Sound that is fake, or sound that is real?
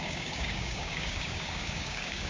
fake